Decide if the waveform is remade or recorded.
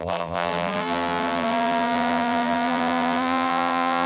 remade